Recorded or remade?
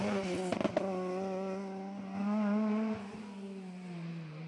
recorded